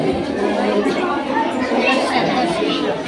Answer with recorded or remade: recorded